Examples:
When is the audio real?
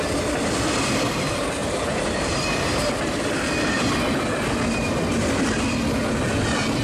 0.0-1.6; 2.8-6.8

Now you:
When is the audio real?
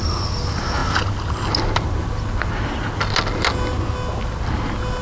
0.0-5.0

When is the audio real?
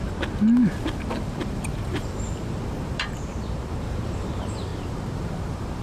0.0-1.1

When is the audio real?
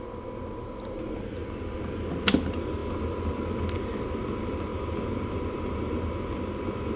0.0-0.6; 1.2-4.7; 6.0-7.0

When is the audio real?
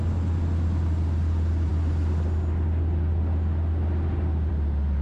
0.0-5.0